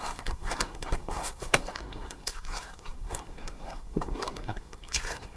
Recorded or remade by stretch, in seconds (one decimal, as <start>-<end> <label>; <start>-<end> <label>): 0.0-5.4 remade